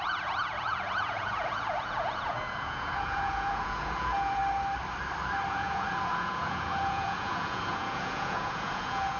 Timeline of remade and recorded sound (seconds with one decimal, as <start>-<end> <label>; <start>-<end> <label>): 0.0-4.4 remade; 4.4-5.5 recorded; 5.5-9.2 remade